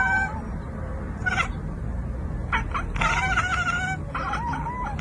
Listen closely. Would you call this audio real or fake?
real